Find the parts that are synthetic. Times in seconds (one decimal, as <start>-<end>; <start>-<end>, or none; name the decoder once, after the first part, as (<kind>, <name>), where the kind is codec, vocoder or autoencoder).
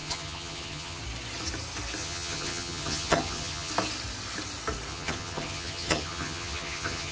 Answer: 0.0-1.0 (vocoder, HiFi-GAN); 2.0-3.7; 4.9-7.1